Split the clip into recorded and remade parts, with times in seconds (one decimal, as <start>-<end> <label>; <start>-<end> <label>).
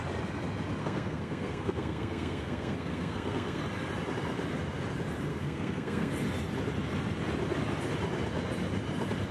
0.0-0.8 recorded; 0.8-3.6 remade; 3.6-5.3 recorded; 5.3-6.1 remade; 6.1-9.3 recorded